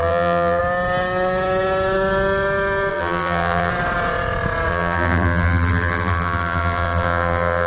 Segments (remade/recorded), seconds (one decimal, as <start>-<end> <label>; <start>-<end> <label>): 0.0-0.6 remade; 0.6-2.9 recorded; 2.9-3.7 remade; 3.7-4.7 recorded; 4.7-7.7 remade